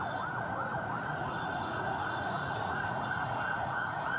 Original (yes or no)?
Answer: no